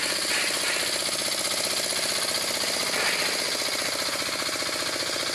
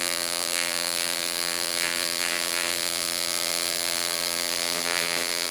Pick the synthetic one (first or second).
second